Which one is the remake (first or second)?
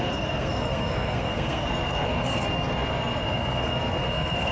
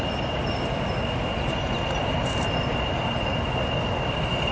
first